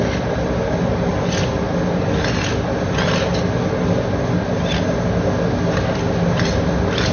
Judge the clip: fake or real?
real